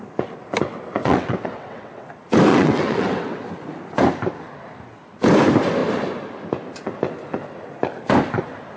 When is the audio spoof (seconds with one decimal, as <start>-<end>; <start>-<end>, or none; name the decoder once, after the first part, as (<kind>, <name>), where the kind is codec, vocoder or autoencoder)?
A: 1.0-2.1 (vocoder, WaveNeXt); 2.5-3.5